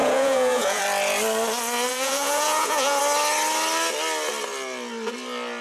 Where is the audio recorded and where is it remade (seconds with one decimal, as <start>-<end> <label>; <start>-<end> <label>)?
0.0-0.8 remade; 0.8-1.9 recorded; 1.9-3.0 remade; 3.0-5.6 recorded